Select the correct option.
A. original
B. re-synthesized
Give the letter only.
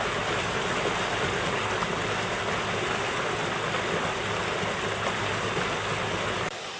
A